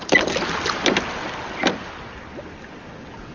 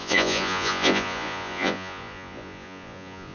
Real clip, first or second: first